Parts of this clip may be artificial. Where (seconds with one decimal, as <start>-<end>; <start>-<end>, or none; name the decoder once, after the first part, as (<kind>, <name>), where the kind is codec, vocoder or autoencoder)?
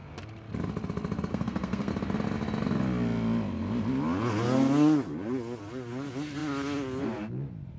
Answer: 1.3-1.9 (codec, SNAC)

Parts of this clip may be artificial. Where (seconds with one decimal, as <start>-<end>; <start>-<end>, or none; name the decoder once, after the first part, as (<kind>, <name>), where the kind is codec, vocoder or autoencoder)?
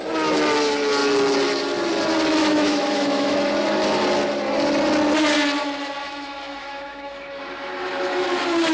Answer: 2.4-3.5 (autoencoder, DAC-VAE); 6.0-7.4